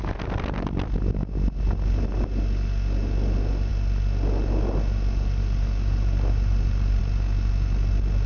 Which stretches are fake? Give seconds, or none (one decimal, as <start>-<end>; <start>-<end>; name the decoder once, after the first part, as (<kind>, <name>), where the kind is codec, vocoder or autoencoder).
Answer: none